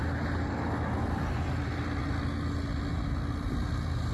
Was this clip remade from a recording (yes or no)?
no